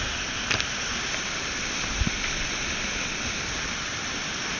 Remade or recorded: recorded